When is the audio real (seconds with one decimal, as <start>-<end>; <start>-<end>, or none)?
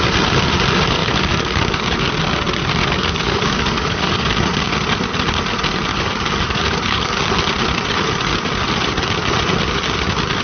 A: 0.0-1.0; 1.8-2.8; 4.3-5.9; 7.2-10.4